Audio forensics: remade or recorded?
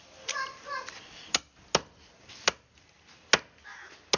recorded